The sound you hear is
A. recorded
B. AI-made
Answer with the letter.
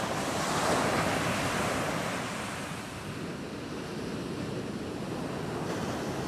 A